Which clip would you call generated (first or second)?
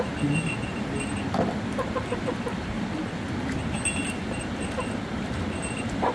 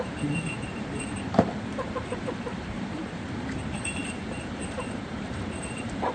second